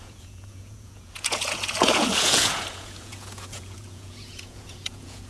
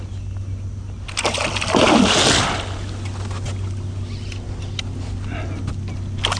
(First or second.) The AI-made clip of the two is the first